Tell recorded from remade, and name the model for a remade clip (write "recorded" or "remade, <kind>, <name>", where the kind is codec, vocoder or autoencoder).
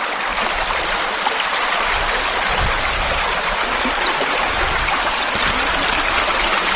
recorded